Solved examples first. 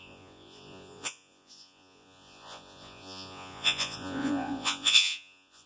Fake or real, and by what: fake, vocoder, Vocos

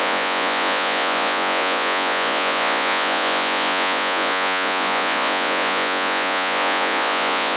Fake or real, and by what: fake, vocoder, Vocos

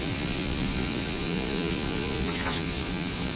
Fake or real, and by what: fake, vocoder, Vocos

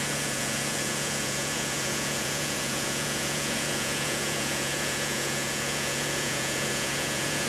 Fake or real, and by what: fake, vocoder, Vocos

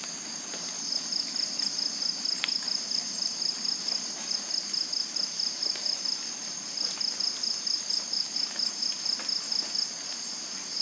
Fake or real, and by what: real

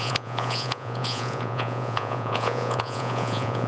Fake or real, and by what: fake, vocoder, Vocos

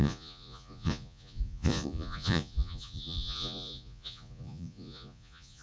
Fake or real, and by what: fake, vocoder, Vocos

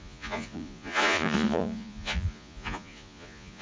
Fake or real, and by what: fake, vocoder, Vocos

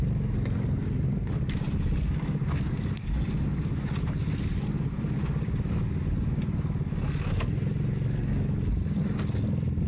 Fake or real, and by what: real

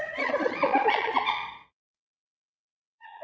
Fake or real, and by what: fake, vocoder, Vocos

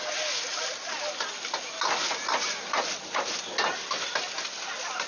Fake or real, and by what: real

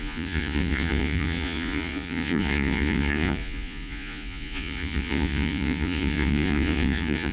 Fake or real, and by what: fake, vocoder, Vocos